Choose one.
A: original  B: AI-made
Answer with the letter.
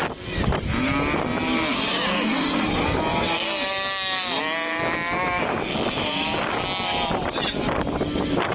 A